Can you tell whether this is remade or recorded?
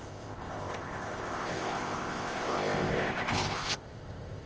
remade